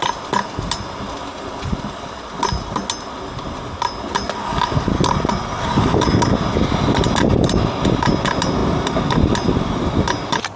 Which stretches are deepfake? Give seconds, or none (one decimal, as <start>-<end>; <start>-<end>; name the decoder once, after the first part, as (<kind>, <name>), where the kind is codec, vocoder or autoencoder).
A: none

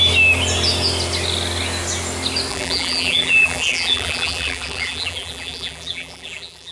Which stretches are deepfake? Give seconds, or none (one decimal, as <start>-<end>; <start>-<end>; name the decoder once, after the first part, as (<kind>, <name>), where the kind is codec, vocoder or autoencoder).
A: 2.5-6.7 (vocoder, BigVGAN v2)

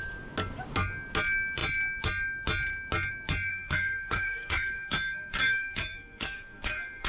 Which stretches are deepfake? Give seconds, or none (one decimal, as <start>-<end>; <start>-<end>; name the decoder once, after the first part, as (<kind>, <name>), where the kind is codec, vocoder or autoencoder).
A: 3.5-7.1 (codec, SNAC)

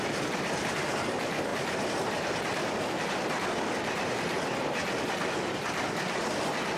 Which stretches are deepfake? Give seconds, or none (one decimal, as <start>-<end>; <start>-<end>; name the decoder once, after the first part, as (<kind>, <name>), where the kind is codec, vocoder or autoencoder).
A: none